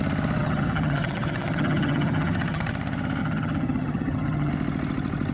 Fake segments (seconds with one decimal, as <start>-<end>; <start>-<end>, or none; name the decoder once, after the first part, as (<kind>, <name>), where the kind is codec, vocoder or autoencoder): 0.4-2.7 (vocoder, HiFi-GAN); 3.2-4.5